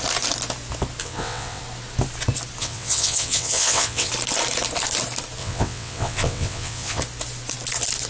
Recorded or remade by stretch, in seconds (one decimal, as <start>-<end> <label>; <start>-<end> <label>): 0.0-1.0 recorded; 1.0-1.6 remade; 1.6-2.6 recorded; 2.6-4.1 remade; 4.1-5.4 recorded; 5.4-7.0 remade; 7.0-8.1 recorded